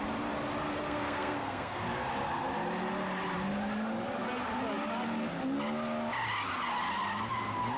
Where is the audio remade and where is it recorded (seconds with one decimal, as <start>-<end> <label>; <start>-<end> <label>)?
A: 0.0-0.8 recorded; 0.8-1.8 remade; 1.8-7.8 recorded